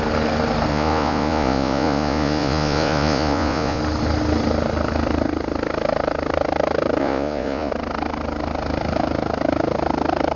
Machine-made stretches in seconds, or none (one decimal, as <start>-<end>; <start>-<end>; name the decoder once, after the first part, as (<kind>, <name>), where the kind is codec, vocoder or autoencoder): 0.7-3.8 (vocoder, Vocos); 7.0-7.7

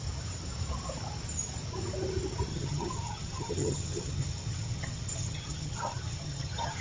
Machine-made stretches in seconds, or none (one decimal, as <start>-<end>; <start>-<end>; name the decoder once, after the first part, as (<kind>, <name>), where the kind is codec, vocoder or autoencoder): 2.5-6.8 (vocoder, HiFi-GAN)

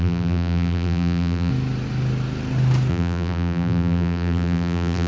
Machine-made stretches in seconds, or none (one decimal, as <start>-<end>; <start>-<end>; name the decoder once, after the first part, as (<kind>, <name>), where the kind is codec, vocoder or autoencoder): 0.0-1.5 (vocoder, BigVGAN v2); 2.9-5.1

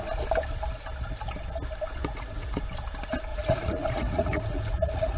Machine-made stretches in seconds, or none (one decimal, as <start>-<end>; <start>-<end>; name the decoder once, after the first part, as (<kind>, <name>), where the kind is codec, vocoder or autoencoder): 2.0-2.6 (vocoder, Vocos); 3.3-5.2